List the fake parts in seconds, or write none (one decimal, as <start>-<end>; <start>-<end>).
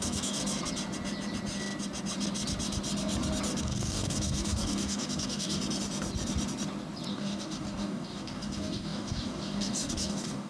0.0-0.4; 3.6-5.6; 7.1-10.5